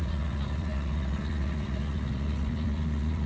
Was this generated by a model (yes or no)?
yes